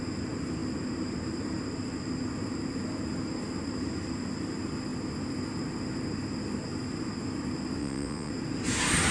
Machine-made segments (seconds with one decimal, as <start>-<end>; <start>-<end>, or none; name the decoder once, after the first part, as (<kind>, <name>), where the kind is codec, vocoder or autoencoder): 7.8-8.3 (vocoder, WaveNeXt)